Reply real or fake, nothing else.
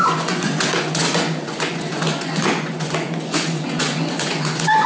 fake